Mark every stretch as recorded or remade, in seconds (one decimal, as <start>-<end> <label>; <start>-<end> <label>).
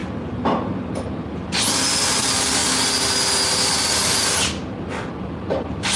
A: 0.0-6.0 recorded